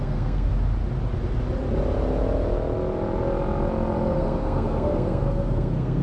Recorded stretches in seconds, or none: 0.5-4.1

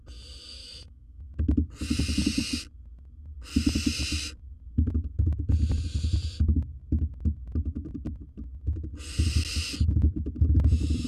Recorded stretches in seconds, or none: 0.0-0.6; 1.3-11.1

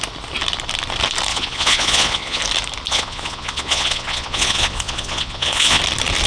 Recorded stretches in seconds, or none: 0.0-1.3; 2.4-2.9; 5.8-6.3

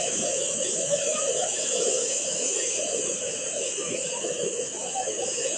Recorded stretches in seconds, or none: none

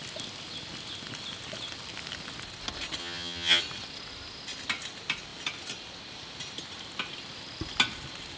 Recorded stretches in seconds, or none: 0.0-3.0; 3.6-8.4

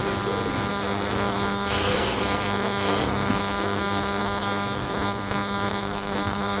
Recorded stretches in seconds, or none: 0.0-0.7